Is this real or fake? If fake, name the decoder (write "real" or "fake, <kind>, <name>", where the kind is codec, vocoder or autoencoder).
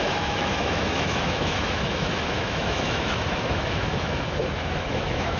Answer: fake, autoencoder, DAC-VAE